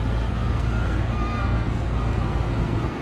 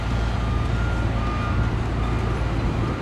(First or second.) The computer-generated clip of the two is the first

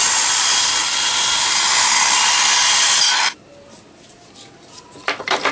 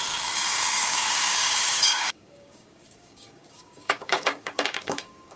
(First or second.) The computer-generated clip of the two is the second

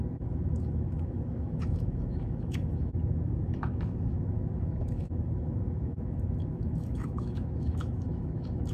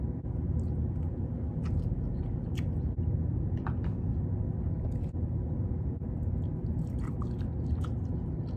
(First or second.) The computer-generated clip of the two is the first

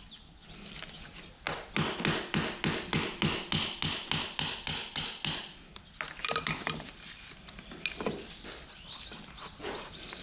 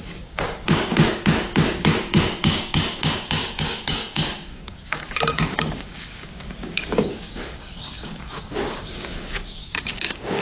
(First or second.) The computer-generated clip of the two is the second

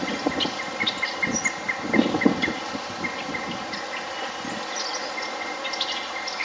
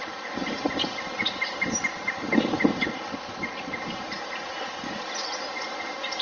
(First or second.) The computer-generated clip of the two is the second